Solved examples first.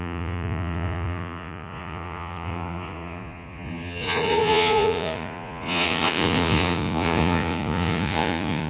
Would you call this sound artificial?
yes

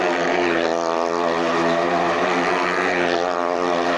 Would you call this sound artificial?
no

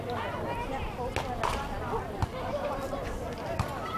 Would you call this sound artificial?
no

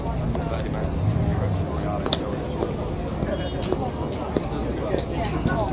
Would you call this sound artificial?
no